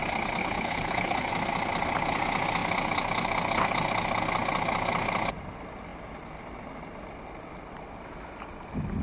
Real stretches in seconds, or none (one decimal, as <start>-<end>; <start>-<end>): 0.0-0.4; 1.3-9.0